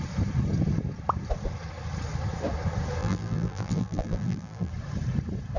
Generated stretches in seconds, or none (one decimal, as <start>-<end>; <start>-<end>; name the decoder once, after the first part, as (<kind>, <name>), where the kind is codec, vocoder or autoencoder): 3.0-4.7 (vocoder, BigVGAN v2)